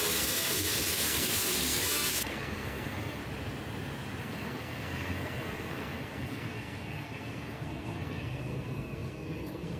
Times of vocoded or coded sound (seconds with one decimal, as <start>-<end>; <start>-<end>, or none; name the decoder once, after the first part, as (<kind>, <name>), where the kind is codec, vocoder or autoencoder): 0.0-3.2 (codec, SNAC); 4.2-9.8